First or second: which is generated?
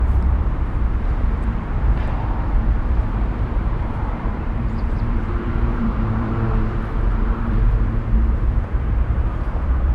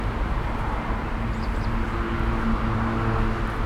first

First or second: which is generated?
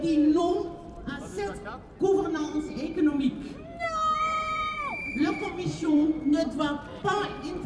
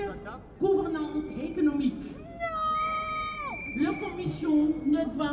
first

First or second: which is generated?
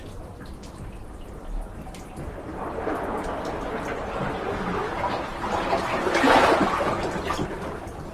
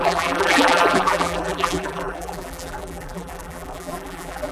second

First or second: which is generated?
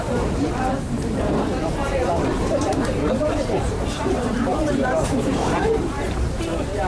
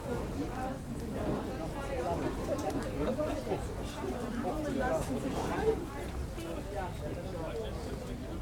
first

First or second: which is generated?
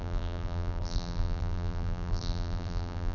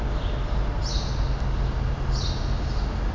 first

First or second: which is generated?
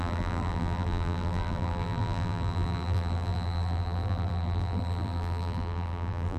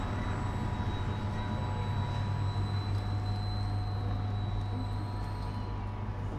first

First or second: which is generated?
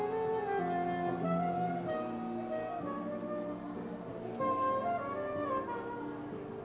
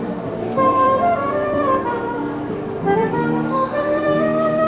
second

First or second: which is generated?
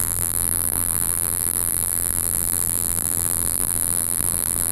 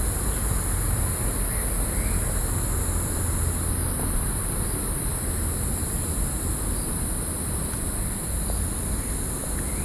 first